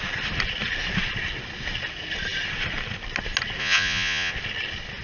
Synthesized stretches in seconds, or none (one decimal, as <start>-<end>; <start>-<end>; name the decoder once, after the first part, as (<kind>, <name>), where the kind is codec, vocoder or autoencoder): 3.6-4.3 (vocoder, Vocos)